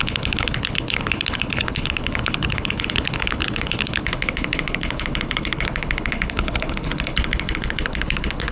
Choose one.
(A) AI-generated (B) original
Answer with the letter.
A